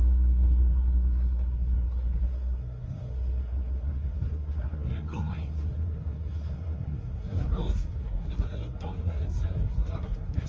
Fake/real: fake